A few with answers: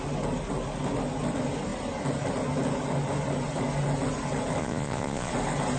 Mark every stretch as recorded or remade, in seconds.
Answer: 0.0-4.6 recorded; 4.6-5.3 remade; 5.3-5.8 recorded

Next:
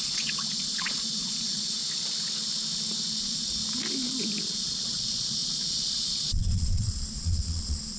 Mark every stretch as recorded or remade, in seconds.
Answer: 0.0-1.8 remade; 1.8-3.2 recorded; 3.2-3.6 remade; 3.6-4.5 recorded; 4.5-8.0 remade

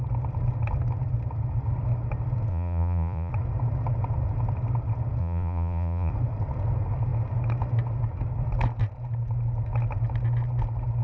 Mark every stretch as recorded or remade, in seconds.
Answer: 0.0-2.5 recorded; 2.5-3.3 remade; 3.3-5.2 recorded; 5.2-6.1 remade; 6.1-11.0 recorded

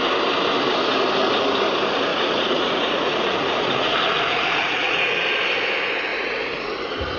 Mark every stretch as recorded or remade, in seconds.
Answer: 0.0-2.1 recorded; 2.1-5.1 remade; 5.1-6.1 recorded; 6.1-6.7 remade; 6.7-7.2 recorded

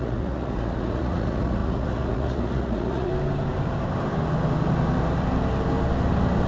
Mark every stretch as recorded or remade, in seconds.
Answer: 0.0-3.1 remade; 3.1-6.5 recorded

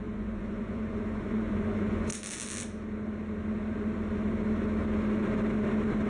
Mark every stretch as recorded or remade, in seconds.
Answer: 0.0-2.1 remade; 2.1-6.1 recorded